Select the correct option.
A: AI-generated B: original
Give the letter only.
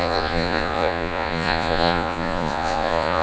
A